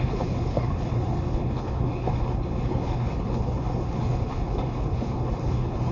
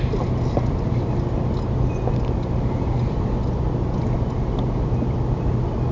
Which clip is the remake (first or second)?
first